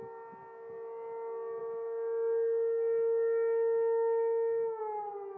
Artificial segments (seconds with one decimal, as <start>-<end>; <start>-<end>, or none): 1.6-4.8